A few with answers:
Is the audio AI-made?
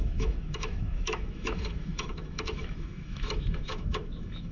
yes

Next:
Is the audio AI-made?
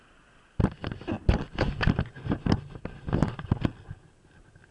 no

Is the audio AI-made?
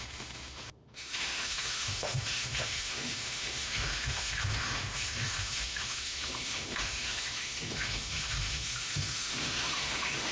yes